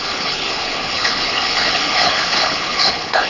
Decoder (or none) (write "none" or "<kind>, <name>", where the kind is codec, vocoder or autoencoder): codec, HILCodec